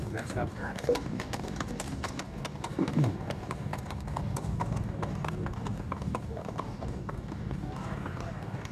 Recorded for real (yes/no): no